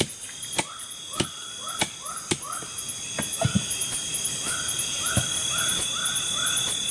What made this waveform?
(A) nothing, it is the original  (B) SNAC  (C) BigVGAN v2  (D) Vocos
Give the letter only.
A